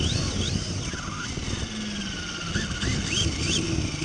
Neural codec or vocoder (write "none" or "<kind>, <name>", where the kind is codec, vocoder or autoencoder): none